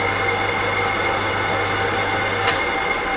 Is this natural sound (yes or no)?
yes